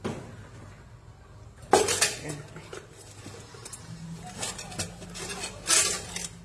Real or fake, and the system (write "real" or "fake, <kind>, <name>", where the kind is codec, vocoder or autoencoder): real